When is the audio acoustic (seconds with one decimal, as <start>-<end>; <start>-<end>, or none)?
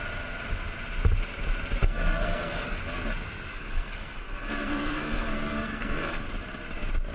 0.0-1.8; 2.8-3.5; 6.2-7.1